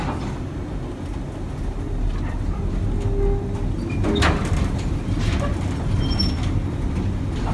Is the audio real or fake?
real